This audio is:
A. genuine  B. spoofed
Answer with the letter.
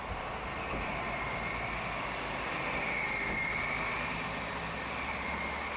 A